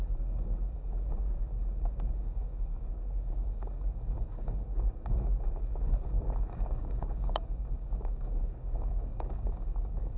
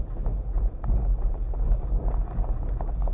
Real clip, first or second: second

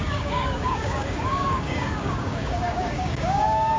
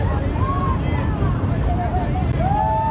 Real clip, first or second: second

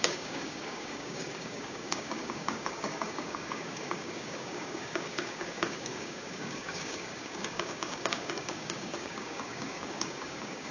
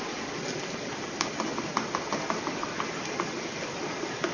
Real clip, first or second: second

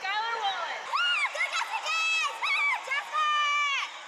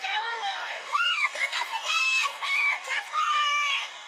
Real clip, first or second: first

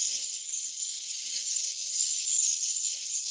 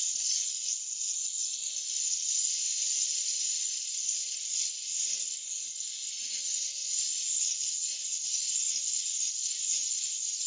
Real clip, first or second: second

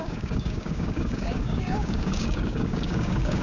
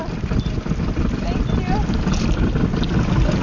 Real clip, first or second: second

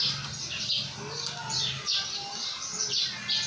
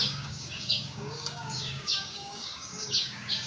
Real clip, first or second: first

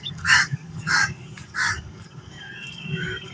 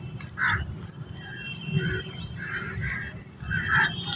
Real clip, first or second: second